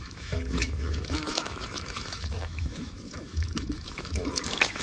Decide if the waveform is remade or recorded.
remade